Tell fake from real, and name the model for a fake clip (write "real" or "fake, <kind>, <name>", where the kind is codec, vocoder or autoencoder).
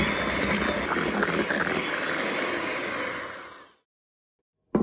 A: real